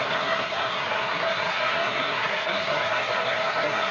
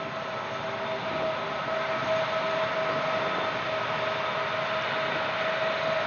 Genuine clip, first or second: second